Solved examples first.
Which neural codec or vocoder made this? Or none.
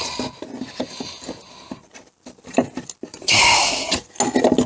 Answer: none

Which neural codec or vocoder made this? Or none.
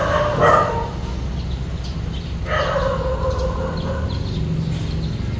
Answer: none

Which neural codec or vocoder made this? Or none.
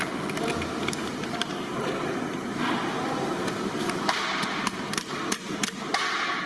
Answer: vocoder, BigVGAN v2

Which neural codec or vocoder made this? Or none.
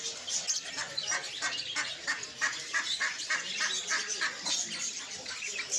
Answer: none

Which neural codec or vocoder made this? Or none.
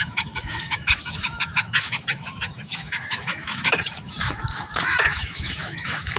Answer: autoencoder, DAC-VAE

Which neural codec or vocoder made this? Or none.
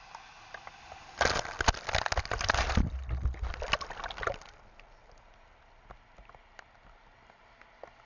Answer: none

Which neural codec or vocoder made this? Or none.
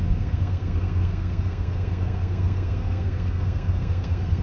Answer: codec, SNAC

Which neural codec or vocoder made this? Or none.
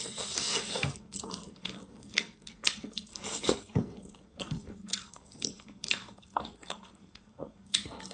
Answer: codec, SNAC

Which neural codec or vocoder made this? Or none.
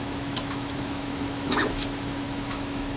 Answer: autoencoder, DAC-VAE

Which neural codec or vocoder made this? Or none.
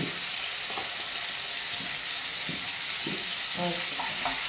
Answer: none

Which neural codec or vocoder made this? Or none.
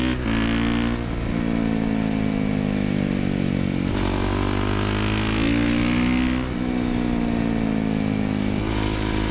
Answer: none